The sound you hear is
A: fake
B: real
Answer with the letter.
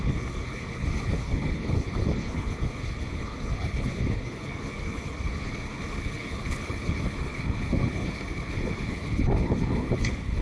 A